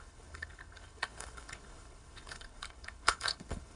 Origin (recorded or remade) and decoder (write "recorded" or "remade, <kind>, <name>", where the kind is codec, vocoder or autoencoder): remade, codec, HILCodec